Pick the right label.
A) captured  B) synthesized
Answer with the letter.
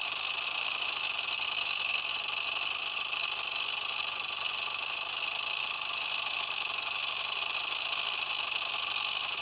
A